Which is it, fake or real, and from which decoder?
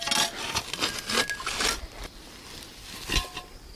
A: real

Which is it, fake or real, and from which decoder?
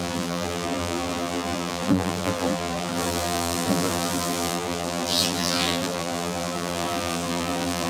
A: fake, vocoder, BigVGAN v2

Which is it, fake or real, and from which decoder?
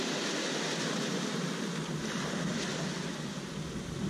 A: real